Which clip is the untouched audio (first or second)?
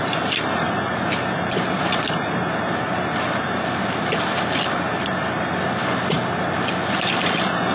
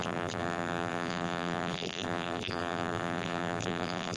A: first